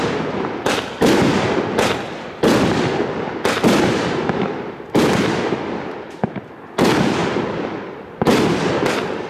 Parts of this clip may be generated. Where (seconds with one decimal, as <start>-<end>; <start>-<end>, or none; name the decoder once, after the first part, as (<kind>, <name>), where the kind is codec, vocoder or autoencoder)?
none